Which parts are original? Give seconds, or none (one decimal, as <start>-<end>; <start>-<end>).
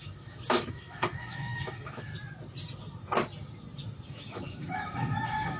2.1-4.1